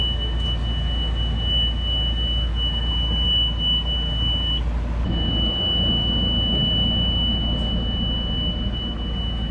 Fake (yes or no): no